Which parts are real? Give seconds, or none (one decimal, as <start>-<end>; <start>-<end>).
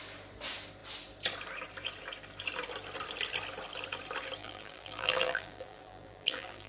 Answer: 0.0-4.4